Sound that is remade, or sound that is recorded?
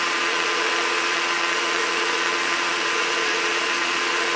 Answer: remade